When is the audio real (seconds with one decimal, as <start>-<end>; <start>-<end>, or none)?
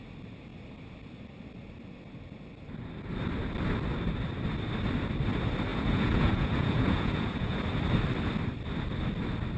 0.0-5.7; 7.6-9.6